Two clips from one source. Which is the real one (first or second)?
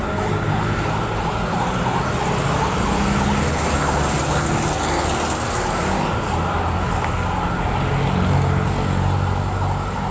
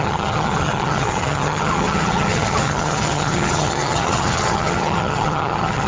first